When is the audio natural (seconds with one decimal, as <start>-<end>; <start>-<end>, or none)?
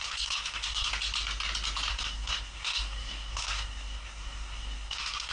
0.9-1.9